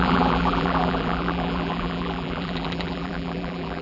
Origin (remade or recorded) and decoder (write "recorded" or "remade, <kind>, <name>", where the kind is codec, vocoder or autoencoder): remade, vocoder, BigVGAN v2